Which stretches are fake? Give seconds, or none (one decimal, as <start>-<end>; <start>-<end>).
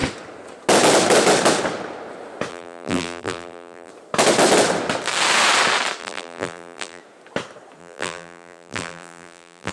2.5-3.9; 6.0-7.0; 7.8-9.7